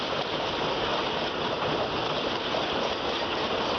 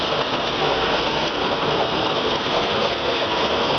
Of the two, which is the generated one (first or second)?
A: second